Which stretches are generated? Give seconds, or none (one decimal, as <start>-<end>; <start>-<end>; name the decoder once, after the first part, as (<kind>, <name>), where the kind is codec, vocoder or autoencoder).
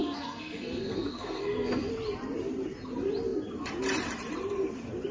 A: 0.0-1.9 (codec, SNAC)